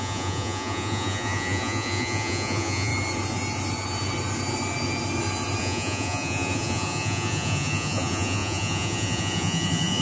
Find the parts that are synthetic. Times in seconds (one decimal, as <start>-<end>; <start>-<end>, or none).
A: 0.0-2.9; 5.6-10.0